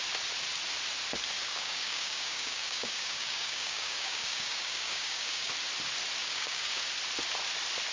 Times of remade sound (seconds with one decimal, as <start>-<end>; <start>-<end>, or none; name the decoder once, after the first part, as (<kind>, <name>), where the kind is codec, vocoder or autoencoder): 1.4-5.5 (codec, DAC); 6.2-6.8